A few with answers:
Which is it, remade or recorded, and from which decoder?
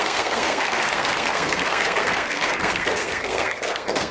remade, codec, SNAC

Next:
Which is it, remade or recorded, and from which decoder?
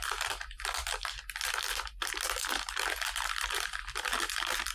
recorded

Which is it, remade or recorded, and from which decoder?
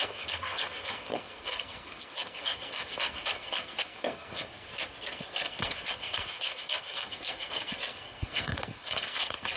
remade, codec, SNAC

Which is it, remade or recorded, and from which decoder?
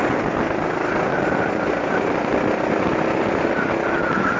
recorded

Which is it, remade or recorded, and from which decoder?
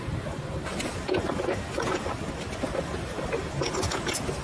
recorded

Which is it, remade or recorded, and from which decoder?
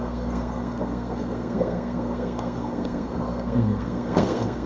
remade, codec, SNAC